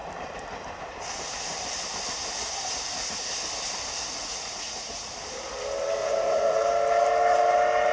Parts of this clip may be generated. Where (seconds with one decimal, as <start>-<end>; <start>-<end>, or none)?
4.2-5.1; 6.0-6.6

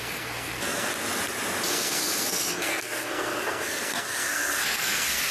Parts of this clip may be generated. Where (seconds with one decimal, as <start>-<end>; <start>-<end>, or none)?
0.0-0.9; 1.7-5.3

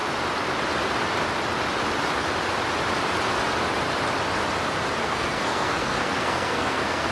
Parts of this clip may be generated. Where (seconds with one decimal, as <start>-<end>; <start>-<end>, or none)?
5.0-7.1

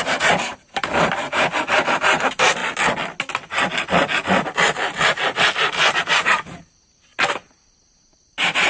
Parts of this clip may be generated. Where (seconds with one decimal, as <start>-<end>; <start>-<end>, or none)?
0.0-2.6; 6.0-8.7